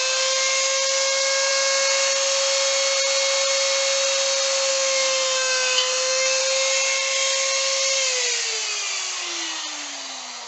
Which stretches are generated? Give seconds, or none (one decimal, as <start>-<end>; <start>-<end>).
4.7-6.4